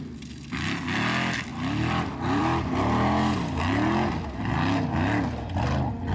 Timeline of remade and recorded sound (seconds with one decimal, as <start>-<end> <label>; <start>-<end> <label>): 0.0-6.1 recorded